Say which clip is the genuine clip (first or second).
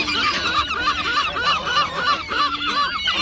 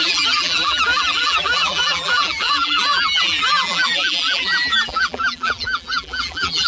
first